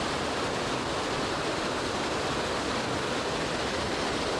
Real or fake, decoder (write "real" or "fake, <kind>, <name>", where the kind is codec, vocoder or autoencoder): real